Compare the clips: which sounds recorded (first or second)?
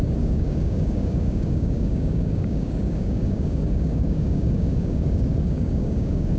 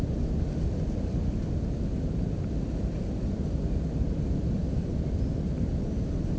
second